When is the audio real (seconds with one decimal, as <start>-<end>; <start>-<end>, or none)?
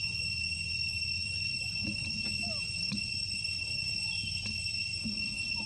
0.0-2.8; 4.5-4.9